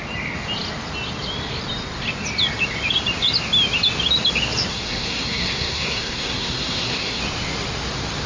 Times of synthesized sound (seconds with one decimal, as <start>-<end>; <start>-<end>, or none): 4.7-7.2